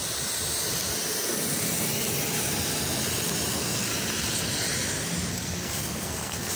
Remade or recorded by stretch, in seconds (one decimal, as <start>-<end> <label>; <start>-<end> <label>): 0.0-3.5 recorded; 3.5-3.9 remade; 3.9-5.3 recorded; 5.3-6.6 remade